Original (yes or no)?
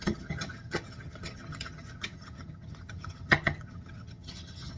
no